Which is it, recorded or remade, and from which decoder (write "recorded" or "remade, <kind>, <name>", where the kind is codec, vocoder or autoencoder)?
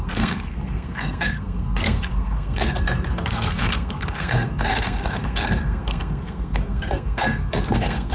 remade, codec, SNAC